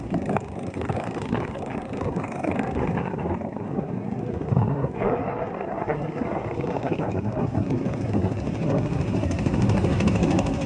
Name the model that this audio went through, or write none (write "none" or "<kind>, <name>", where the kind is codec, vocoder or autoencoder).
codec, SNAC